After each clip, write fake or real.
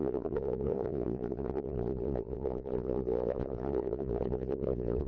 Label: fake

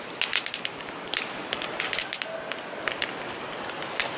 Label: real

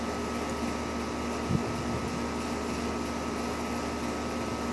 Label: real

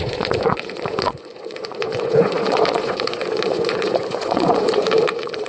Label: fake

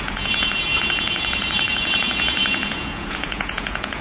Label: fake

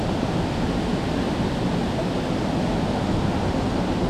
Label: real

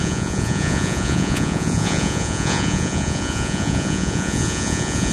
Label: fake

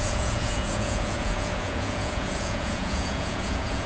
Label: fake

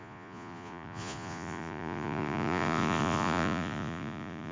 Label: fake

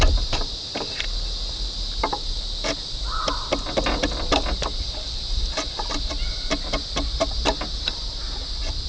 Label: real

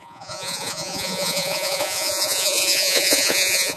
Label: fake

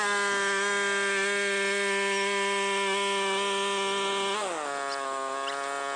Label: real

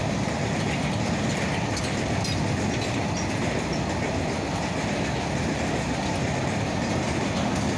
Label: real